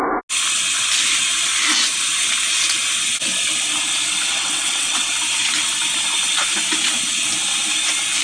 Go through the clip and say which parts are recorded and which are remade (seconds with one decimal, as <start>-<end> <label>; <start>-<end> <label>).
0.0-4.3 recorded; 4.3-5.1 remade; 5.1-8.2 recorded